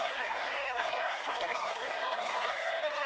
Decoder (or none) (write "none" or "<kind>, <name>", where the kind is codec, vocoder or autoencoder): codec, SNAC